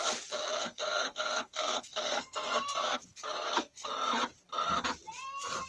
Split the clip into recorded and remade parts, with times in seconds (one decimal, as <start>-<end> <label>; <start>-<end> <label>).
0.0-0.6 recorded; 0.6-3.9 remade; 3.9-5.7 recorded